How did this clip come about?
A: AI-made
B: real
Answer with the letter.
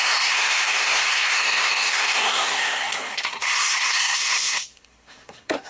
A